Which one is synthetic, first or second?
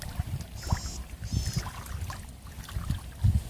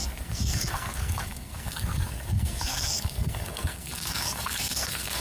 second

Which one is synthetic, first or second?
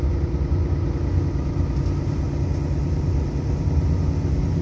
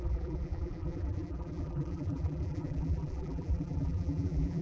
second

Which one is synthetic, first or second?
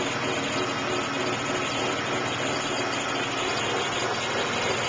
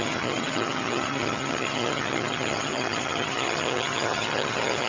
second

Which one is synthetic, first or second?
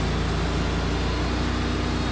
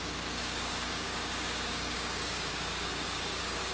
second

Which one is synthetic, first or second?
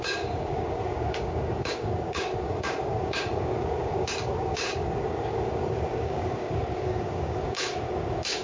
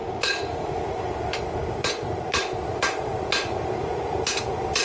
first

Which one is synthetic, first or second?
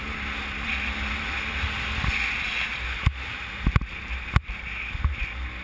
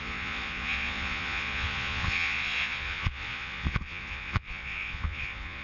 second